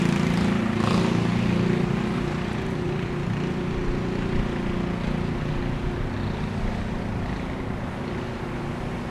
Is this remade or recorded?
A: recorded